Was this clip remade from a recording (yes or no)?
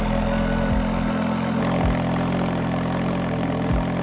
no